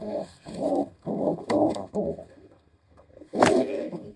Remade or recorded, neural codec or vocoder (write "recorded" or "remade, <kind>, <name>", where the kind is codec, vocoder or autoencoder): remade, codec, SNAC